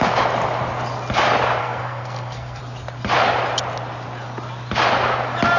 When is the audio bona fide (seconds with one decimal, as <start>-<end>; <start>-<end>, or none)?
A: 0.0-1.6; 2.6-5.6